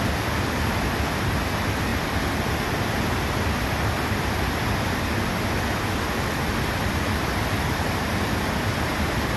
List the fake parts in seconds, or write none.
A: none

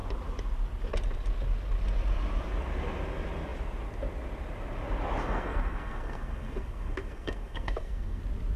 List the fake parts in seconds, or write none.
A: 5.2-8.2 (codec, SNAC)

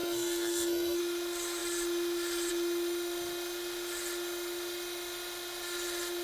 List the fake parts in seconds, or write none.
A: 0.0-1.0 (codec, SNAC)